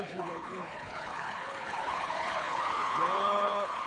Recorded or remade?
remade